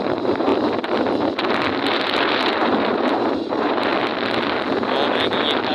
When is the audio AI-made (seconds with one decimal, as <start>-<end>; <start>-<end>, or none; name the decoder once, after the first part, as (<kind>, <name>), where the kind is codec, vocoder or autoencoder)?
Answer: 0.0-0.5 (vocoder, BigVGAN v2); 2.6-3.9